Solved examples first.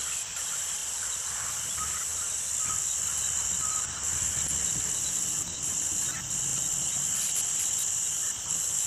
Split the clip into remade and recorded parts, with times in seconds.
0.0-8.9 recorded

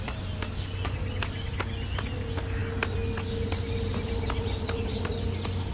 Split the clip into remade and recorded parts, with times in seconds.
0.0-5.7 recorded

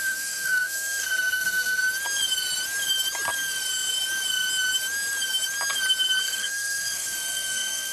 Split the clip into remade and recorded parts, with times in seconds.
0.0-1.8 remade; 1.8-6.2 recorded; 6.2-7.9 remade

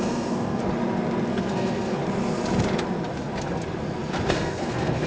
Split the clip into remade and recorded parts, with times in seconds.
0.0-0.6 remade; 0.6-1.3 recorded; 1.3-2.0 remade; 2.0-4.3 recorded; 4.3-5.1 remade

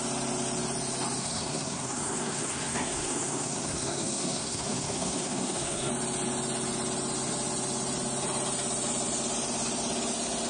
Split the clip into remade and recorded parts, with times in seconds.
0.0-1.2 recorded; 1.2-5.9 remade; 5.9-10.5 recorded